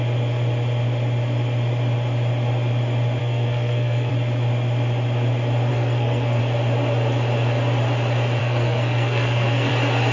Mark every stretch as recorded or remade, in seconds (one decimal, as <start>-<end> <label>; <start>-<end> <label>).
0.0-3.2 recorded; 3.2-4.1 remade; 4.1-5.7 recorded; 5.7-6.4 remade; 6.4-8.4 recorded; 8.4-9.7 remade; 9.7-10.1 recorded